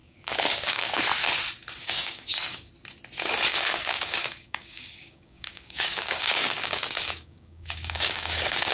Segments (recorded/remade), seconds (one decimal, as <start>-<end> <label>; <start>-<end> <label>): 0.0-1.0 remade; 1.0-1.8 recorded; 1.8-2.7 remade; 2.7-3.5 recorded; 3.5-8.7 remade